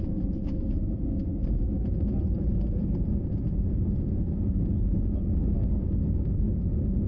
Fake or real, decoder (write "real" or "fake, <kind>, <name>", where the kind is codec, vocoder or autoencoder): fake, vocoder, Vocos